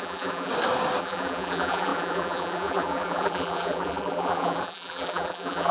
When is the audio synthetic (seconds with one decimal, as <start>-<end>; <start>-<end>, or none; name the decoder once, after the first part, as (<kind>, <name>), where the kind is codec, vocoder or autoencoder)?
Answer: 0.0-0.5 (vocoder, BigVGAN v2); 1.0-5.7